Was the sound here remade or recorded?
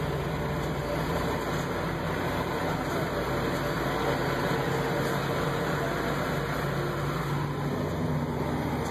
recorded